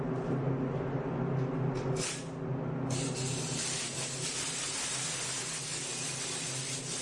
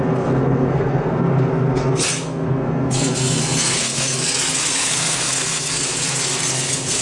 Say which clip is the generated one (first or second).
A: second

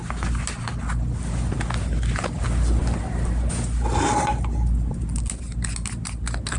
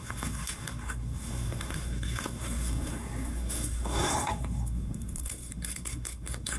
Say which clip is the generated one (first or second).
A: second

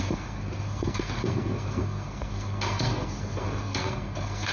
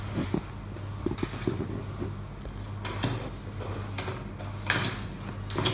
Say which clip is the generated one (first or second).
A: first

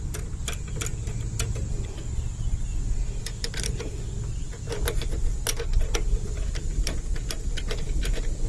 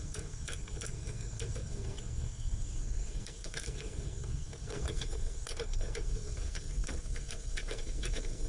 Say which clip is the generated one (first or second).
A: second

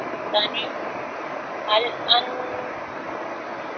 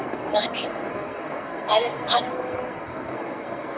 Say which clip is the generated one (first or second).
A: second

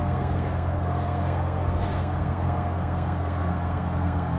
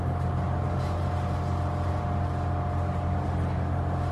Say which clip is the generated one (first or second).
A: first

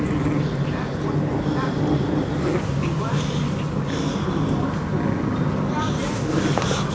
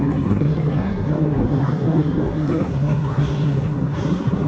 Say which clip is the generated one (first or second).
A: second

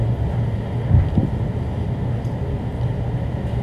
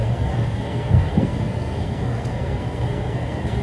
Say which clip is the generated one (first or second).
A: second